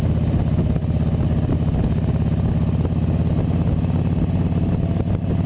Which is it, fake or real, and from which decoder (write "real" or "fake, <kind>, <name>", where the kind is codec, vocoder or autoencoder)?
real